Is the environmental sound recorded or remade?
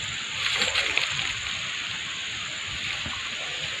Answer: recorded